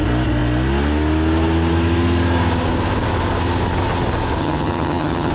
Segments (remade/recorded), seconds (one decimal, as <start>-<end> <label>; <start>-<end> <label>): 0.0-4.4 recorded; 4.4-5.3 remade